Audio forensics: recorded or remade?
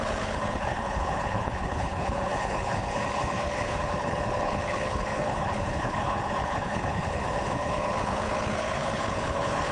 remade